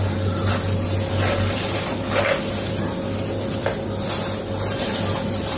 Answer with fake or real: real